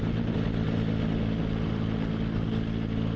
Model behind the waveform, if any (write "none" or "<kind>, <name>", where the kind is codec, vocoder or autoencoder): none